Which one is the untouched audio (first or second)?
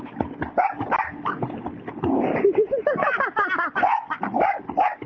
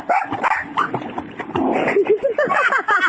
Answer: first